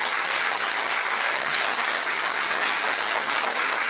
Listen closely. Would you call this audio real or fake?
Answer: fake